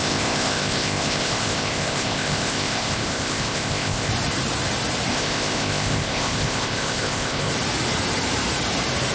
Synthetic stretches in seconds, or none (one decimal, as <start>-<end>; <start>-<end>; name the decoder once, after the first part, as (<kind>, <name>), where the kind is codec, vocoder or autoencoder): 0.0-4.1 (codec, ZipCodec); 5.1-7.5